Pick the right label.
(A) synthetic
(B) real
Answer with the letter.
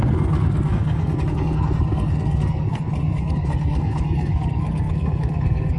A